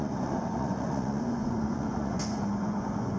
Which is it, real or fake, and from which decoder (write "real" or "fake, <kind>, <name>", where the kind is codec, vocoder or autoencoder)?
fake, vocoder, Vocos